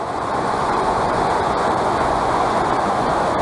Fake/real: fake